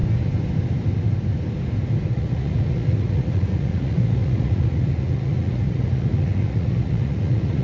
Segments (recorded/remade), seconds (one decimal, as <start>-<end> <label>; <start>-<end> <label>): 0.0-2.1 recorded; 2.1-7.6 remade